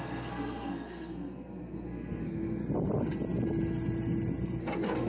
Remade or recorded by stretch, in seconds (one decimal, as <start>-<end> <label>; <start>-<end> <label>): 0.0-2.6 remade; 2.6-4.6 recorded; 4.6-5.1 remade